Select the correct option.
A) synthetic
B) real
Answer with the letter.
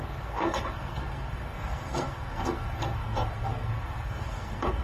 A